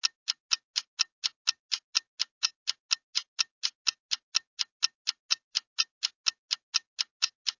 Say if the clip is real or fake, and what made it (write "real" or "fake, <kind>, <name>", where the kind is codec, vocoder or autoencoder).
real